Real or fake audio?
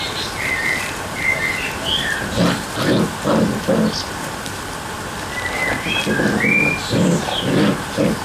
real